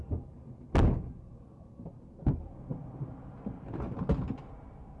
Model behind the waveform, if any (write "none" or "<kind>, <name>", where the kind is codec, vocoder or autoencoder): none